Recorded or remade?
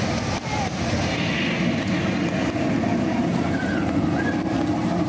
recorded